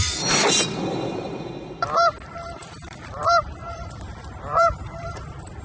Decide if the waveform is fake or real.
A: fake